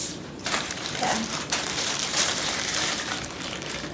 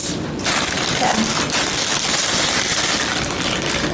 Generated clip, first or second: first